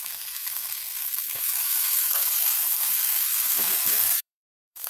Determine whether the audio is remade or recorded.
remade